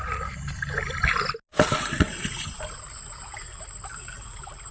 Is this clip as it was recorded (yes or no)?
yes